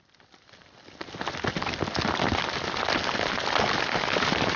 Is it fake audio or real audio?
real